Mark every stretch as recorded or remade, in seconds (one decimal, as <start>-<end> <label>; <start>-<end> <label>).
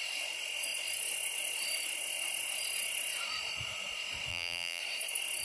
0.0-4.3 recorded; 4.3-4.8 remade; 4.8-5.4 recorded